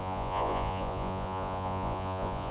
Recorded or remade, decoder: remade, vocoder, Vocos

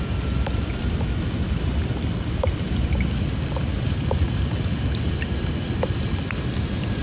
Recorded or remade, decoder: remade, vocoder, BigVGAN v2